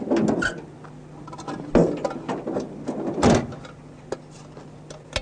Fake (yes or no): no